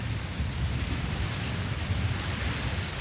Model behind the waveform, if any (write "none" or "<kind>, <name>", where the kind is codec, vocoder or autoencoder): vocoder, BigVGAN v2